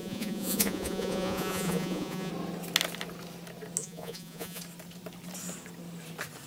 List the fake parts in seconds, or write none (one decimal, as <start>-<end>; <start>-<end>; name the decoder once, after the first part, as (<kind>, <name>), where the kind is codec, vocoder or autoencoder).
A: 0.0-2.3 (vocoder, Vocos); 3.8-4.6